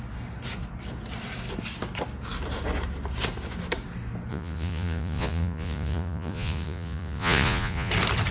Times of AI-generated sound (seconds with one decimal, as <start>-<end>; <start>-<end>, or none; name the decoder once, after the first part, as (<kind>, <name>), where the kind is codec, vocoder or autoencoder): 4.3-7.9 (vocoder, Vocos)